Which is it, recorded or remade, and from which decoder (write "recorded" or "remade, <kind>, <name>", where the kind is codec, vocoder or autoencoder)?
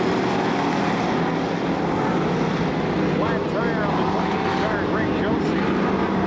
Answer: recorded